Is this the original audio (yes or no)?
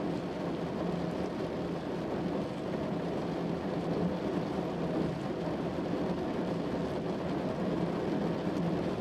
yes